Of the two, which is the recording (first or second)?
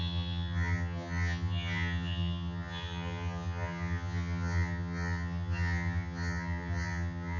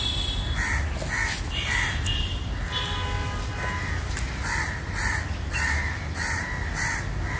second